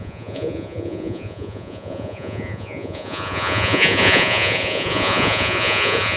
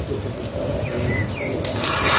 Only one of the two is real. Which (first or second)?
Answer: second